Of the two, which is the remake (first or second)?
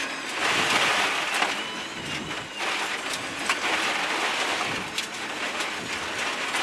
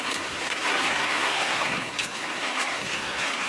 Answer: second